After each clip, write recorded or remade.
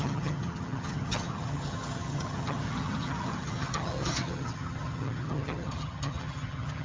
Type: remade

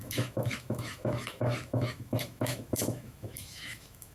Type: remade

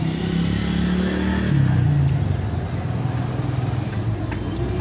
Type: recorded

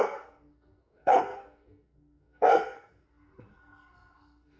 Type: remade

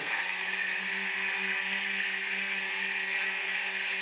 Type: remade